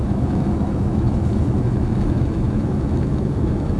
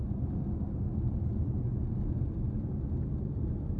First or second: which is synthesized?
first